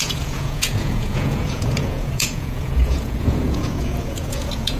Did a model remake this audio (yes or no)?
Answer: yes